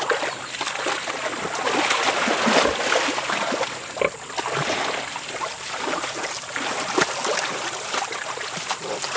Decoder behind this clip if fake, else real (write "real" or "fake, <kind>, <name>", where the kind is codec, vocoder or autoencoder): real